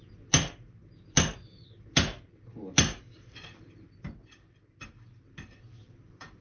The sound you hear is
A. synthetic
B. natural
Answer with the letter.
B